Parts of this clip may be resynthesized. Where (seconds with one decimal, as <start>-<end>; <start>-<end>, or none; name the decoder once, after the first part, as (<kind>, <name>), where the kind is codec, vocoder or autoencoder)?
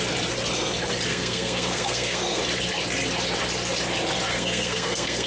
1.1-2.4 (codec, SNAC); 4.3-5.3